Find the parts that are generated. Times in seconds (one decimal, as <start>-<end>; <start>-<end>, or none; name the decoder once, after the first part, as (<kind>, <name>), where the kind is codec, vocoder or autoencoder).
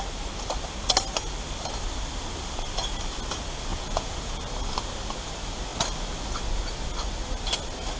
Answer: 3.7-4.4 (vocoder, Vocos)